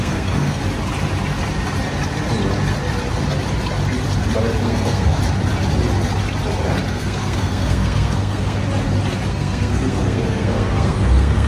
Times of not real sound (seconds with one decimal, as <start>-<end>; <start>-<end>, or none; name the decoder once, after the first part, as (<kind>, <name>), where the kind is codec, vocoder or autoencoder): 0.0-0.6 (codec, SNAC); 4.6-5.2; 6.9-8.6; 9.3-11.5